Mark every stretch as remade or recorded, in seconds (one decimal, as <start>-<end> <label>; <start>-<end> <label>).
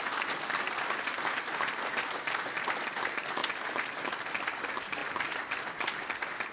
0.0-3.4 recorded; 3.4-4.0 remade; 4.0-5.0 recorded; 5.0-5.5 remade; 5.5-6.5 recorded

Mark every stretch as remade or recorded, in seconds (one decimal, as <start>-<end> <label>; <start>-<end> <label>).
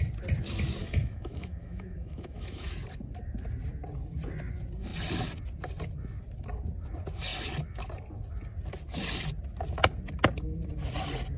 0.0-0.8 recorded; 0.8-2.7 remade; 2.7-11.4 recorded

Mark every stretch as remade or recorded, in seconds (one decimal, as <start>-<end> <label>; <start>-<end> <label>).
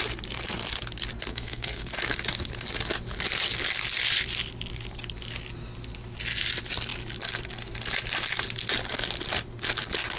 0.0-1.3 recorded; 1.3-1.9 remade; 1.9-10.2 recorded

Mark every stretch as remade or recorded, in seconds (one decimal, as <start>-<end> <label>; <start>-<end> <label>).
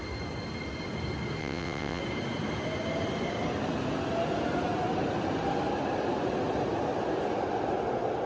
0.0-1.4 recorded; 1.4-2.0 remade; 2.0-8.3 recorded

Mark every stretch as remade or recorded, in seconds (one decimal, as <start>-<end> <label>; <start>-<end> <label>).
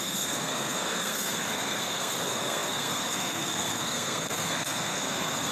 0.0-5.5 remade